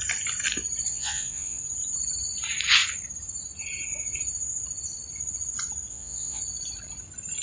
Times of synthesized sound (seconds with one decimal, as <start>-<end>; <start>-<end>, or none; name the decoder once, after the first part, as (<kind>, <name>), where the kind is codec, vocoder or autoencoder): 0.9-1.6 (vocoder, Vocos); 5.9-6.4